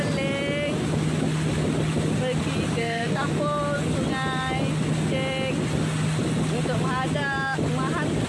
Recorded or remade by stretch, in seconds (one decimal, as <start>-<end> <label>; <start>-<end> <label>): 0.0-2.8 recorded; 2.8-3.3 remade; 3.3-8.3 recorded